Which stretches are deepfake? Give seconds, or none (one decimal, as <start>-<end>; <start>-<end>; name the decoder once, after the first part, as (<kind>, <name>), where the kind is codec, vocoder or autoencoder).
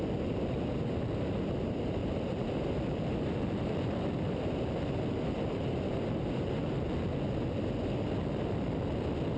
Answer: 2.0-6.8 (vocoder, BigVGAN v2)